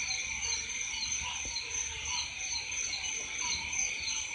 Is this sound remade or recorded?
recorded